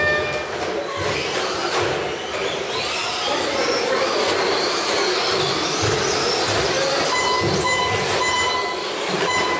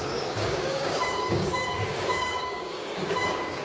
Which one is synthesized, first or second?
second